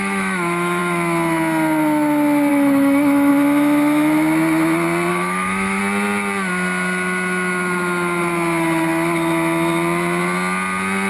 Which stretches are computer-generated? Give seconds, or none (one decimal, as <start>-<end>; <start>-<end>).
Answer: 0.0-0.8; 2.5-3.3; 5.1-5.8